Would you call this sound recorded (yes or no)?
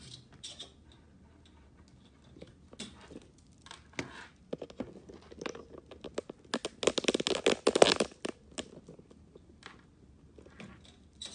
yes